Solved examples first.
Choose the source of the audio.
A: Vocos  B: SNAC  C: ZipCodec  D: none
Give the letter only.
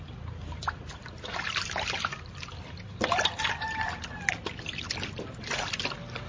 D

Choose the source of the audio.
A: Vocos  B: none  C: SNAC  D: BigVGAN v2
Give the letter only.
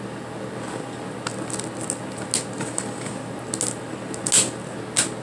B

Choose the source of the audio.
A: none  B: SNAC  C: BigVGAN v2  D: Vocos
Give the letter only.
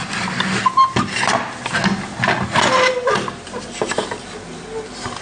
A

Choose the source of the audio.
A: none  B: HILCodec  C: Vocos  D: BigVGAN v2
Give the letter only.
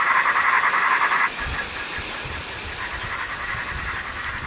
A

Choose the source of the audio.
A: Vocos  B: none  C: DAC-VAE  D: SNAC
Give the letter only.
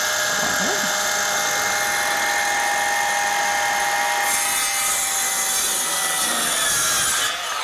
B